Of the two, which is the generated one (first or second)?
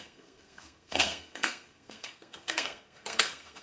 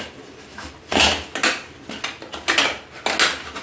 first